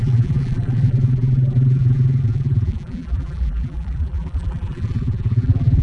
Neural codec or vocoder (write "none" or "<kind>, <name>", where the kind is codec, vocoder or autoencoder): vocoder, BigVGAN v2